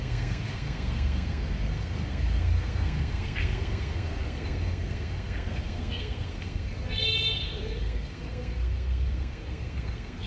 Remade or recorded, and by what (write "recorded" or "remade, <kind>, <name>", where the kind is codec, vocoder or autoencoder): remade, codec, SNAC